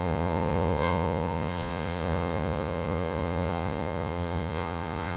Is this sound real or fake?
fake